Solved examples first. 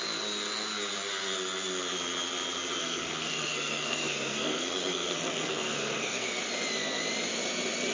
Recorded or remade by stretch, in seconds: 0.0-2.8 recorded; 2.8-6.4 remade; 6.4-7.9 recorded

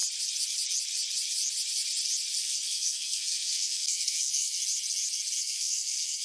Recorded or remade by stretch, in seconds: 0.0-2.4 recorded; 2.4-4.6 remade; 4.6-5.4 recorded; 5.4-6.2 remade

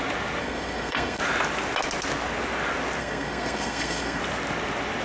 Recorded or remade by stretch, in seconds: 0.0-0.4 recorded; 0.4-1.2 remade; 1.2-3.0 recorded; 3.0-4.2 remade; 4.2-5.0 recorded

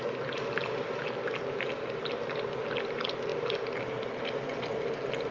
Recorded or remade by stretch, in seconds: 0.0-5.3 recorded

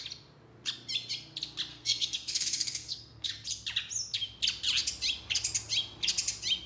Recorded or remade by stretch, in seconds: 0.0-1.7 recorded; 1.7-3.3 remade; 3.3-6.7 recorded